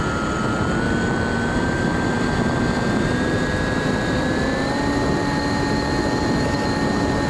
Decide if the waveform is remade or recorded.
recorded